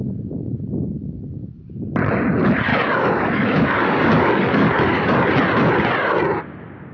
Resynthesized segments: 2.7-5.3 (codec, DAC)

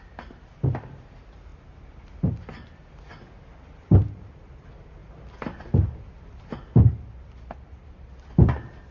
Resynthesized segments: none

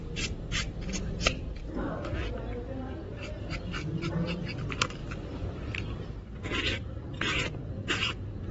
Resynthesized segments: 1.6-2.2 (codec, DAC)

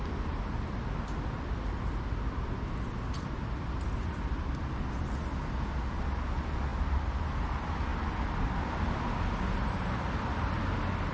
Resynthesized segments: none

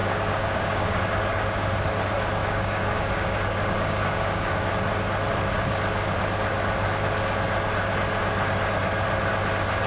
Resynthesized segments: 0.0-1.0 (codec, DAC); 2.4-4.7